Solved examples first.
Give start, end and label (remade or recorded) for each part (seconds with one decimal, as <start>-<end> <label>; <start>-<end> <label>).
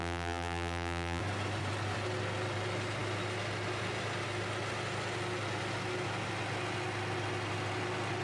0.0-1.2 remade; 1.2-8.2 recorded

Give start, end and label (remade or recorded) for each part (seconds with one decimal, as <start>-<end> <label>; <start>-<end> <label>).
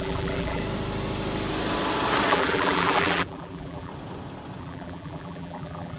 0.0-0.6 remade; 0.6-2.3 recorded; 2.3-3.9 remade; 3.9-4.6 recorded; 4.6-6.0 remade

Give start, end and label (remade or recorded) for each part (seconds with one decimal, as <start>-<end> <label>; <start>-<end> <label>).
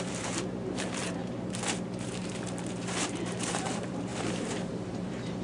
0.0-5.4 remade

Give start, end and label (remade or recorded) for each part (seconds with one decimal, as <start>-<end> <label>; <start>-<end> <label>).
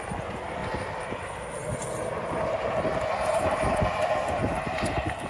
0.0-5.3 recorded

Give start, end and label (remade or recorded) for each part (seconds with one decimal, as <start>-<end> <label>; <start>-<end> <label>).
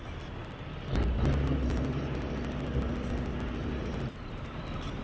0.0-3.6 recorded; 3.6-4.6 remade; 4.6-5.0 recorded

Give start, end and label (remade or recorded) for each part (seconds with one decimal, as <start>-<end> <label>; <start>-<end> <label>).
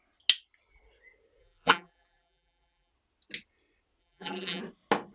0.0-1.4 recorded; 1.4-2.9 remade; 2.9-4.0 recorded; 4.0-4.6 remade; 4.6-5.1 recorded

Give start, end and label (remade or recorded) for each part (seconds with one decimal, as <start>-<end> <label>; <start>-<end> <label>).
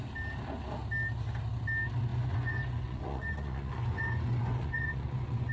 0.0-2.1 recorded; 2.1-5.5 remade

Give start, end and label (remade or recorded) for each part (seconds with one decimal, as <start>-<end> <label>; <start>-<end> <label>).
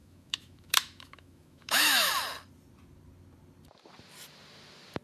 0.0-2.1 remade; 2.1-5.0 recorded